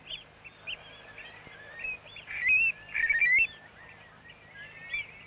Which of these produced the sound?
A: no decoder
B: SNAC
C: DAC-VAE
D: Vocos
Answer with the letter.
A